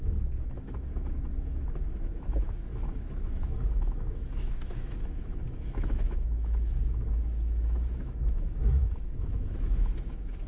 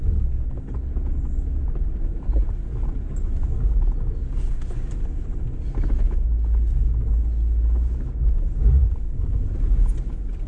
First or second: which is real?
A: second